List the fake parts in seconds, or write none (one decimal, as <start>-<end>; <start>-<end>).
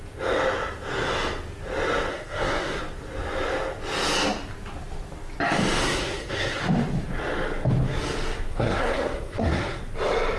2.1-2.8; 5.8-6.6; 8.5-9.8